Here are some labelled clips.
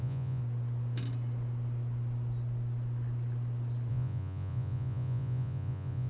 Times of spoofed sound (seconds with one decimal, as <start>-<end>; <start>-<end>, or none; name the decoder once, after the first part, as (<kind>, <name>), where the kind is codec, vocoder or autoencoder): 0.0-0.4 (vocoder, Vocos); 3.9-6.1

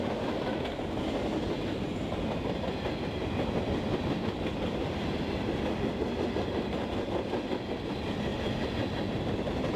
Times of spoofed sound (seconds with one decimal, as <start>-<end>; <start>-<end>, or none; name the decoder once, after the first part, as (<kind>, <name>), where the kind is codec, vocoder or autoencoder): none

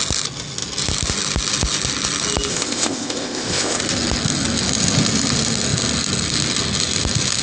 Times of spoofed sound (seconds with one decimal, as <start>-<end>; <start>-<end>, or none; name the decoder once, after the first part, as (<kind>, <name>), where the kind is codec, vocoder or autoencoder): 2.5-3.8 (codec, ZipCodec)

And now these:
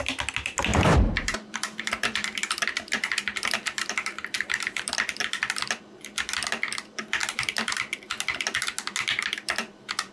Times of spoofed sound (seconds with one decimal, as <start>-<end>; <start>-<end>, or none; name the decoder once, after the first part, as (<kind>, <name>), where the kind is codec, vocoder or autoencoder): 0.7-5.0 (vocoder, BigVGAN v2); 7.2-8.0